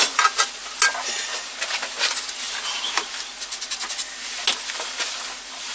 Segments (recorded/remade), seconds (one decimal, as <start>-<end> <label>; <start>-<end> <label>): 0.0-5.7 recorded